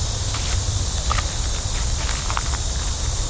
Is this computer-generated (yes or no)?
yes